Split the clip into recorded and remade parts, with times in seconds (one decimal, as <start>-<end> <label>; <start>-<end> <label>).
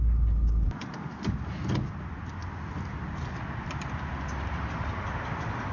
0.0-5.7 recorded